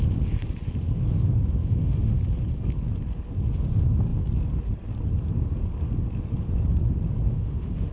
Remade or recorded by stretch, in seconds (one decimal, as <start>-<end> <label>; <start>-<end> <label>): 0.0-1.6 recorded; 1.6-2.2 remade; 2.2-7.3 recorded; 7.3-7.9 remade